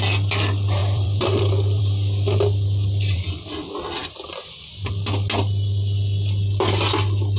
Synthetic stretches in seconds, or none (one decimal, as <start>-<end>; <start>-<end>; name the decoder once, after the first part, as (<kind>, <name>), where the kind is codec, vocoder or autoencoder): 0.8-1.8 (vocoder, BigVGAN v2); 4.0-4.9